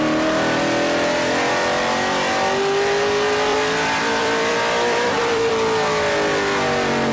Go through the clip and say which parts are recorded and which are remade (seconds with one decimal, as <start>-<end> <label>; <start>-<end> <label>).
0.0-3.5 recorded; 3.5-5.5 remade; 5.5-7.1 recorded